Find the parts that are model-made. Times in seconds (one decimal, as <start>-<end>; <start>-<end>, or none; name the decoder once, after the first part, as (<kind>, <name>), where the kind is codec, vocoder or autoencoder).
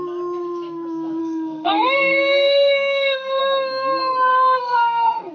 1.2-3.4 (codec, SNAC); 4.3-5.3